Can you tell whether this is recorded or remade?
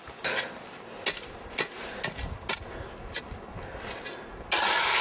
recorded